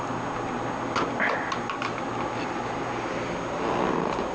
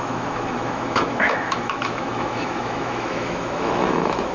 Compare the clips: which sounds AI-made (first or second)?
second